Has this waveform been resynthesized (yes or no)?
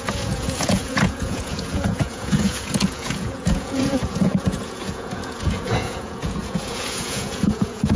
yes